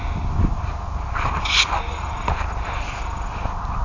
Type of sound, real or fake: real